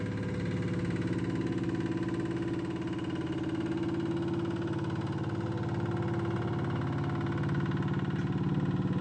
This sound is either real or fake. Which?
real